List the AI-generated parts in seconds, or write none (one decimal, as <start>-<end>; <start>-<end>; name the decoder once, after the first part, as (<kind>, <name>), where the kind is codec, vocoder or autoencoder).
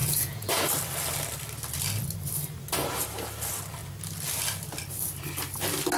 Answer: 0.0-0.5 (vocoder, Vocos)